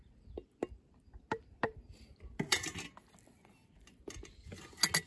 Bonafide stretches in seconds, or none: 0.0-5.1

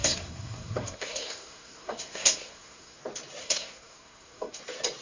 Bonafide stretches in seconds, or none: 3.0-3.4; 4.6-5.0

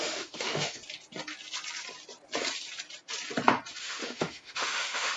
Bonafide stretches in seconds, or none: 0.8-3.8

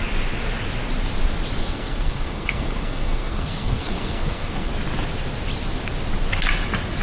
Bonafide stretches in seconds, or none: 0.0-1.6; 4.7-7.0

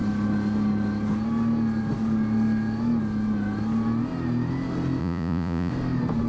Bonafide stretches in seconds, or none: 0.0-5.0; 5.7-6.3

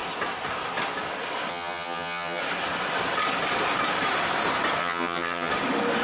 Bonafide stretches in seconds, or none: 0.0-1.5; 2.4-4.8; 5.5-6.0

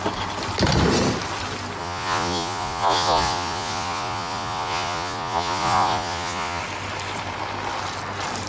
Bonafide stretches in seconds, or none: 0.0-1.8; 6.6-8.5